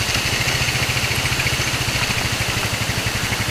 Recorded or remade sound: recorded